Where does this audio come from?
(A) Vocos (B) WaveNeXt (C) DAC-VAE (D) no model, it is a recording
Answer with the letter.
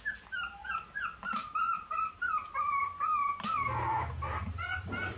D